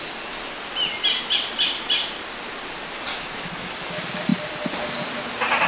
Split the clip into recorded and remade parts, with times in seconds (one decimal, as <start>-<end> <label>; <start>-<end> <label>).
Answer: 0.0-3.1 recorded; 3.1-3.7 remade; 3.7-5.7 recorded